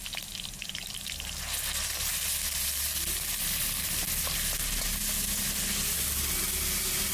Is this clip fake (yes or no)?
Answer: no